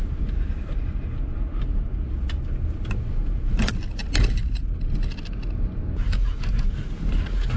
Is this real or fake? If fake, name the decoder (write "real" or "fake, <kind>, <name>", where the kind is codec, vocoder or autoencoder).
real